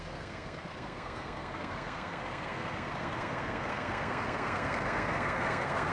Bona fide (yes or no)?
no